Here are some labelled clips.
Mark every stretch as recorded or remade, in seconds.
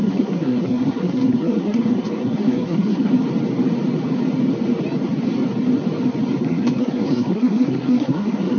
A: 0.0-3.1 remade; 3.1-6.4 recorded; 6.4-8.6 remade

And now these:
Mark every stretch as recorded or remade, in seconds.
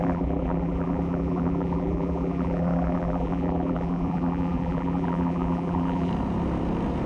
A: 0.0-6.1 remade; 6.1-7.1 recorded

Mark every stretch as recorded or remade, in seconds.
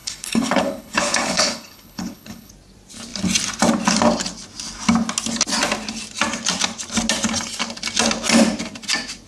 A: 0.0-2.5 remade; 2.5-9.3 recorded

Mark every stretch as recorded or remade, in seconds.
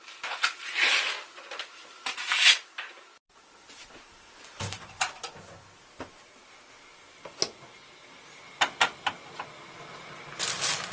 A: 0.0-1.7 recorded; 1.7-5.2 remade; 5.2-10.9 recorded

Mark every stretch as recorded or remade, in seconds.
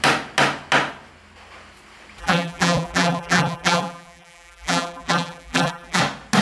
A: 0.0-2.2 recorded; 2.2-6.0 remade; 6.0-6.4 recorded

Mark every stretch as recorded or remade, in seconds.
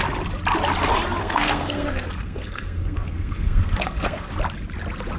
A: 0.0-1.2 recorded; 1.2-4.3 remade; 4.3-5.2 recorded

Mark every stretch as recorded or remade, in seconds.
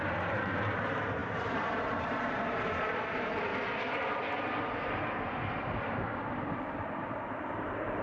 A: 0.0-3.5 remade; 3.5-6.3 recorded; 6.3-8.0 remade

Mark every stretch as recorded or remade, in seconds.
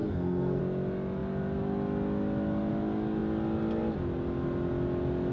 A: 0.0-0.6 remade; 0.6-5.3 recorded